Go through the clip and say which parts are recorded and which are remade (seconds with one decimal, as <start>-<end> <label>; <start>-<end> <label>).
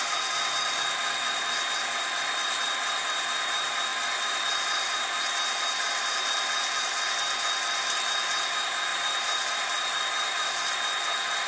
0.0-8.9 recorded; 8.9-10.0 remade; 10.0-11.5 recorded